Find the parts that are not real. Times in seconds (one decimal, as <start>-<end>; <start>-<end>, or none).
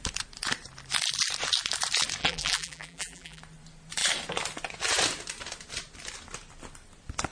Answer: 2.2-3.4